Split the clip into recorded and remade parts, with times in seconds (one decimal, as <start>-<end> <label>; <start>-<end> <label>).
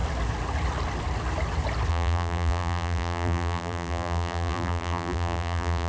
0.0-1.9 recorded; 1.9-5.9 remade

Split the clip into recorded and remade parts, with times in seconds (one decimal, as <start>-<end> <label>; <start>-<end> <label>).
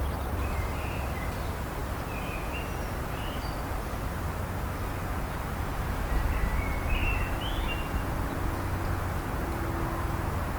0.0-10.6 recorded